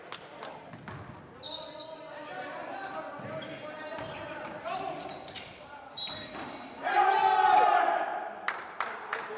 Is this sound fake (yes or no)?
no